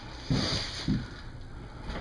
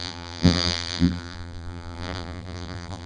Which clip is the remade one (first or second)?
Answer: second